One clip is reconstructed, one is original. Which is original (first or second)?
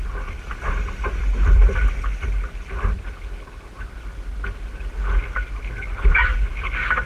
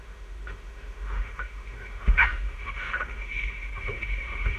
first